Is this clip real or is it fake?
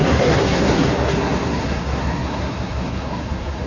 fake